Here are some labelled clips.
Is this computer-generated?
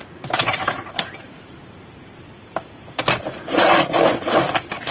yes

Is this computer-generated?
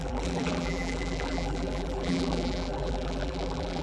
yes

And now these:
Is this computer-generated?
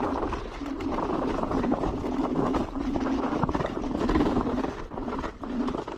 yes